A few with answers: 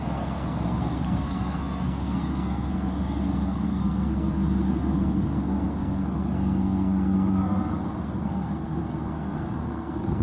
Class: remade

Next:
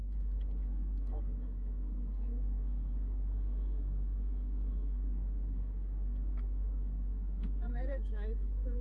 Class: remade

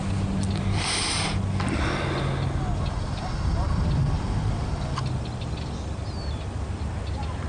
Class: recorded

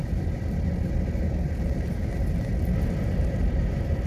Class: recorded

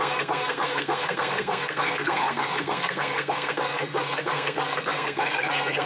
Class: remade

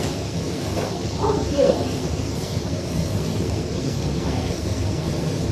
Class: remade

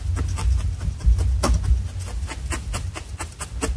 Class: recorded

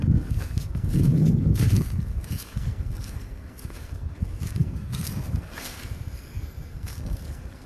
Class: remade